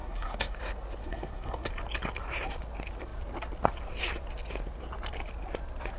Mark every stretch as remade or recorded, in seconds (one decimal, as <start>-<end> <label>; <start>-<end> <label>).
0.0-0.6 remade; 0.6-1.0 recorded; 1.0-1.7 remade; 1.7-6.0 recorded